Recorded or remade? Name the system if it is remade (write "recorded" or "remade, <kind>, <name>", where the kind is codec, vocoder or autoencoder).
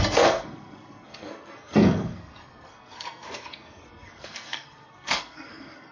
remade, codec, SNAC